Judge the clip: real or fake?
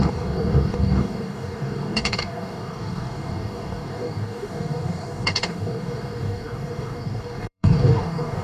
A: fake